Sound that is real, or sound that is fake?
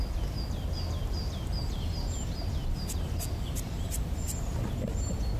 real